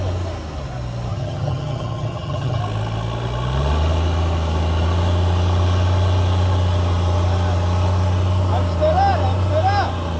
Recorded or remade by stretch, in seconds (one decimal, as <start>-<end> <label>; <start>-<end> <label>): 0.0-1.1 recorded; 1.1-2.6 remade; 2.6-10.2 recorded